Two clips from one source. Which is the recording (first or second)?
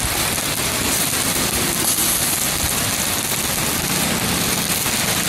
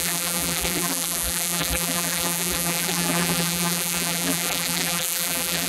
first